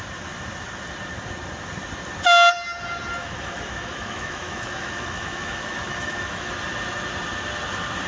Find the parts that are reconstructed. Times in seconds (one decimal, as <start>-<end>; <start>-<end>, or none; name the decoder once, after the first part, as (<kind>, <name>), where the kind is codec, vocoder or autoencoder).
3.2-6.5 (autoencoder, DAC-VAE)